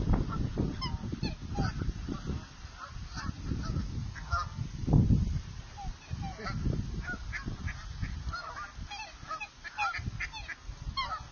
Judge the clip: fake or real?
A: real